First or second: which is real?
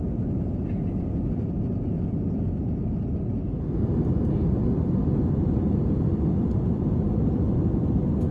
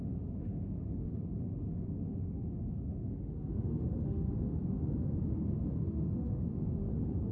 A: first